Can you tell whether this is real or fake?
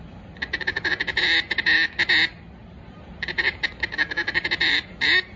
real